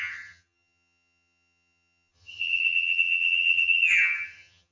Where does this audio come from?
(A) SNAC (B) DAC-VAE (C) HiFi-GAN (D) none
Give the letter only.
C